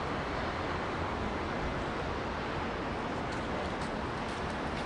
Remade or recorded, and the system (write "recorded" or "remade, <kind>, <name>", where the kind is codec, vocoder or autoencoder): recorded